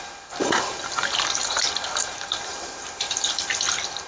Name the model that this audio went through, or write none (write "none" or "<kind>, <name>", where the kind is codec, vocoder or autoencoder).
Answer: vocoder, BigVGAN v2